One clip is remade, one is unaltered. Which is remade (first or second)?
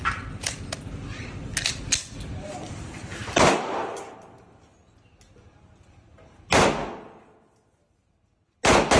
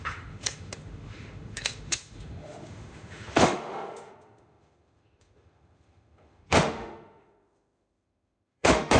second